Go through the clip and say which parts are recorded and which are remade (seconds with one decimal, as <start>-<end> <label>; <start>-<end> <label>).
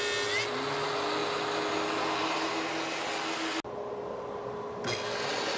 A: 0.0-5.6 recorded